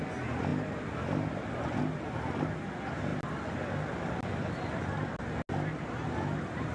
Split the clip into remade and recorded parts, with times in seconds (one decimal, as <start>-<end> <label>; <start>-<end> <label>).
0.0-6.7 recorded